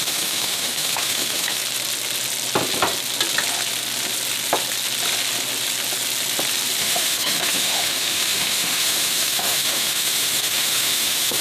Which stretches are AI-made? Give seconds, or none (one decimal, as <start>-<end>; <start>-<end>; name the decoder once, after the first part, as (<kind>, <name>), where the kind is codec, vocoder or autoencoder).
0.0-1.6 (autoencoder, DAC-VAE); 6.8-11.4